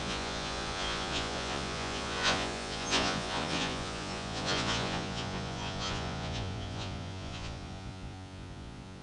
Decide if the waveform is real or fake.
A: fake